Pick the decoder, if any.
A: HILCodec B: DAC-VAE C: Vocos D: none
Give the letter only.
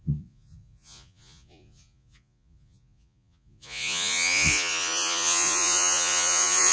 C